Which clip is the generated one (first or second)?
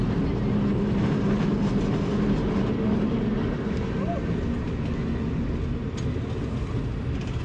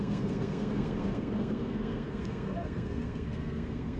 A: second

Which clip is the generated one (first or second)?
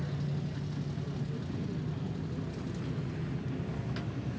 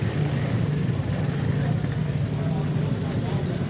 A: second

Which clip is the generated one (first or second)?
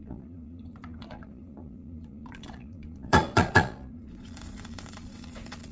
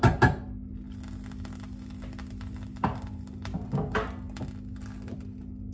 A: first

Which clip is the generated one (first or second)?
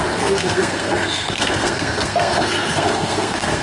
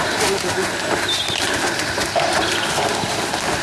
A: first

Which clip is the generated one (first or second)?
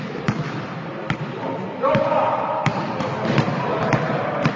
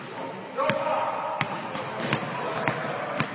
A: first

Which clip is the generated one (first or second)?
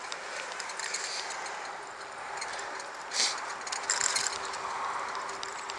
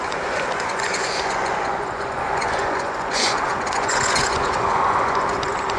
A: second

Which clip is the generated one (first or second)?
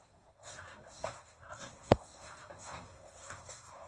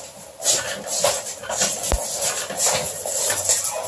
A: first